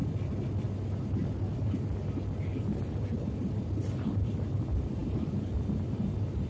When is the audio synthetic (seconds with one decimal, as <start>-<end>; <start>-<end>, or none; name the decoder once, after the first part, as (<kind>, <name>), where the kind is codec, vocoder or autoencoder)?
none